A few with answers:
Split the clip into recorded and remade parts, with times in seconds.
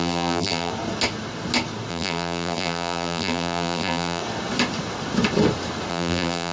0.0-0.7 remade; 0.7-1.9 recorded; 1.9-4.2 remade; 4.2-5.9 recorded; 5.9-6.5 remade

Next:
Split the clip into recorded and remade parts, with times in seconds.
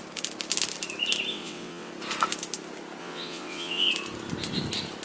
0.0-1.3 recorded; 1.3-1.9 remade; 1.9-3.0 recorded; 3.0-3.9 remade; 3.9-5.0 recorded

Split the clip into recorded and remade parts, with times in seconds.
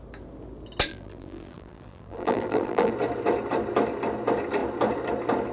0.0-0.9 recorded; 0.9-2.9 remade; 2.9-5.5 recorded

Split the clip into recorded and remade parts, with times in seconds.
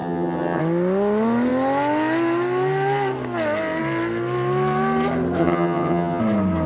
0.0-0.6 remade; 0.6-5.4 recorded; 5.4-6.2 remade; 6.2-6.7 recorded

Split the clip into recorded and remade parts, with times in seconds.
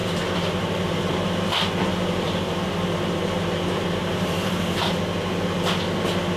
0.0-1.4 remade; 1.4-1.9 recorded; 1.9-5.0 remade; 5.0-6.4 recorded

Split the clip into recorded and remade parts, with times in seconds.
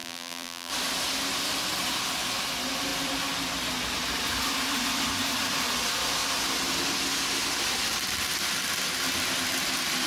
0.0-0.7 remade; 0.7-10.1 recorded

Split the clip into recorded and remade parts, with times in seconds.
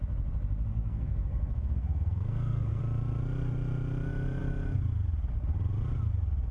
0.0-0.7 recorded; 0.7-2.8 remade; 2.8-6.5 recorded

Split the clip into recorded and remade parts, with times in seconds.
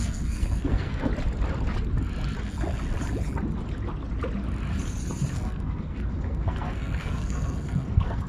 0.0-1.1 remade; 1.1-5.3 recorded; 5.3-8.3 remade